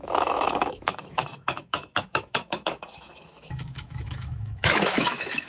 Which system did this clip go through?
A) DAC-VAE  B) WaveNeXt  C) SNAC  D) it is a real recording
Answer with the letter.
A